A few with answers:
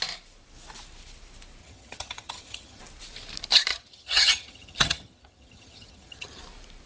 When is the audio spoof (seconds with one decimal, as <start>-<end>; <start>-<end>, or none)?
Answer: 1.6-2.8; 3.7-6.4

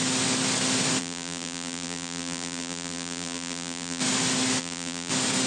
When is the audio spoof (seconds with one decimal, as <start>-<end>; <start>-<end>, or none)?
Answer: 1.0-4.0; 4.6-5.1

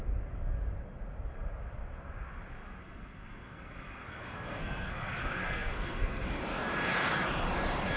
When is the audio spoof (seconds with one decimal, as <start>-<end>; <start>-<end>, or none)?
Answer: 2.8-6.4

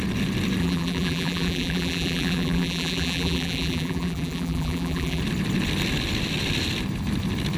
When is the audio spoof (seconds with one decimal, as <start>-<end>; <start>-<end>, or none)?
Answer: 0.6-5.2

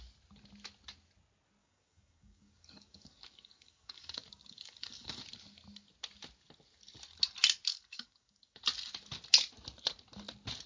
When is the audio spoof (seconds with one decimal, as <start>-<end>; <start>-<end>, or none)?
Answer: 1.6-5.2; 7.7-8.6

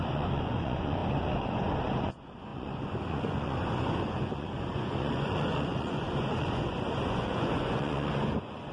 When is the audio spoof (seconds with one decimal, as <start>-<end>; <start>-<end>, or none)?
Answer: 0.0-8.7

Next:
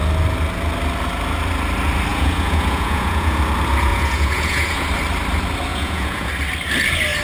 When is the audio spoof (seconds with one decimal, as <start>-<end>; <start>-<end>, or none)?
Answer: 2.1-3.4; 3.9-4.9; 5.7-6.3